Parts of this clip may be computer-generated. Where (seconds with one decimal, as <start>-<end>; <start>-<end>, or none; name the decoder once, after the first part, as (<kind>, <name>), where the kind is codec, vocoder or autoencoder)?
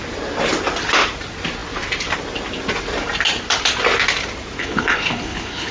4.6-5.7 (codec, HILCodec)